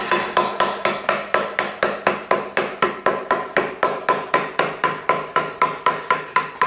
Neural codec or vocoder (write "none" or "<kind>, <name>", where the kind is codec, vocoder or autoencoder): none